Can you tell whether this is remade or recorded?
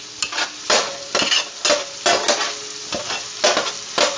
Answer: recorded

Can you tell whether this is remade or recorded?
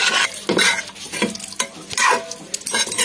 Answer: recorded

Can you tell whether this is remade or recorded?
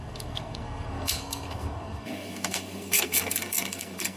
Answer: remade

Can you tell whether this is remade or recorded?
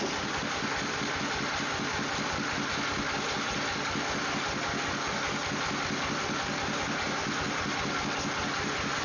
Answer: recorded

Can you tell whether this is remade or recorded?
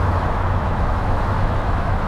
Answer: remade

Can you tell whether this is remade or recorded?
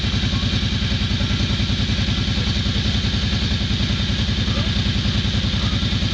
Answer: recorded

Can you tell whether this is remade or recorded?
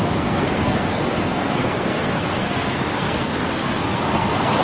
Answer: remade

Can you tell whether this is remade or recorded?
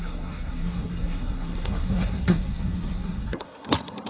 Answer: remade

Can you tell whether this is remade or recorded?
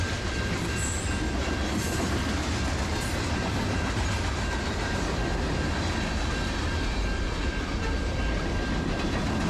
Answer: remade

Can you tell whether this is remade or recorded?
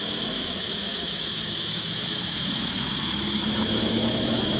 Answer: remade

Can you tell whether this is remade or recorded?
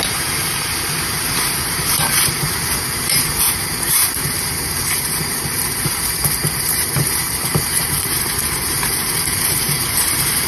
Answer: remade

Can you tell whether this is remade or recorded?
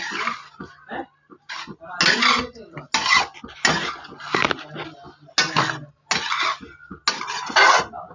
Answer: recorded